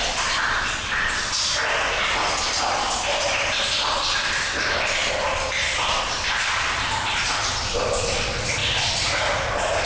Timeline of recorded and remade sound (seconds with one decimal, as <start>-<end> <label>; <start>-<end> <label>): 0.0-9.9 recorded